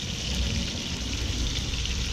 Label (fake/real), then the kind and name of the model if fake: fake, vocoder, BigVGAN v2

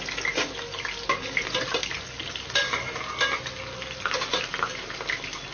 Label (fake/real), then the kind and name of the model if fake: real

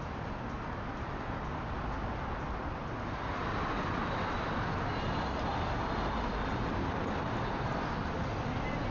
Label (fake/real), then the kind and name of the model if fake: real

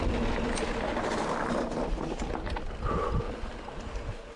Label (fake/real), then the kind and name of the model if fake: fake, vocoder, BigVGAN v2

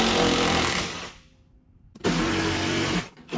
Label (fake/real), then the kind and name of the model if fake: fake, vocoder, BigVGAN v2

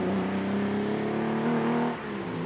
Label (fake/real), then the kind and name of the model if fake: real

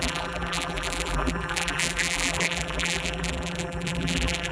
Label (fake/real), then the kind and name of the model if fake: fake, vocoder, BigVGAN v2